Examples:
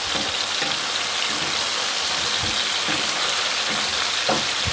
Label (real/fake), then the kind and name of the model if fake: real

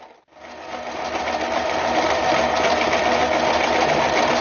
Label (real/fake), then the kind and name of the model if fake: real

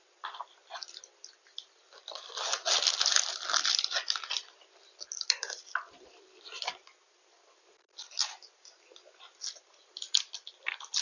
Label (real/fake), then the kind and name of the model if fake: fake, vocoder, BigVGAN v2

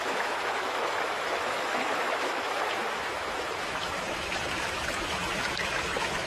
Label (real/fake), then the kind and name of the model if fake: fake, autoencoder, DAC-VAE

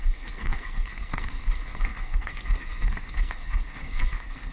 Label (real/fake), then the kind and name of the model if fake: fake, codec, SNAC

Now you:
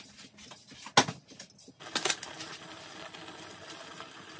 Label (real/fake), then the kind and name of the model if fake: real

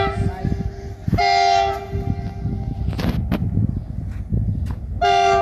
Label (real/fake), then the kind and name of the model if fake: real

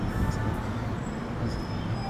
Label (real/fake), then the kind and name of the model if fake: real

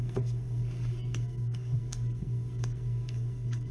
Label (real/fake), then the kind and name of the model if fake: fake, codec, SNAC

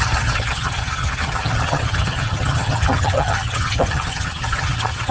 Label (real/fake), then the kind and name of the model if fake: fake, vocoder, HiFi-GAN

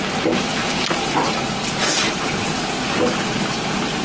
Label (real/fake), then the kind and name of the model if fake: real